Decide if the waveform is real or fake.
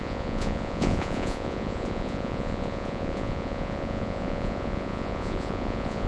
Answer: fake